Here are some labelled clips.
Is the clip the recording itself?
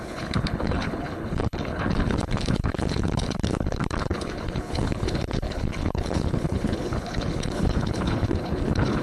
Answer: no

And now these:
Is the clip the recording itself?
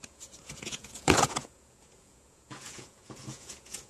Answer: no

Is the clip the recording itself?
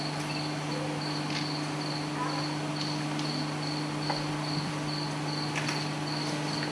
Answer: yes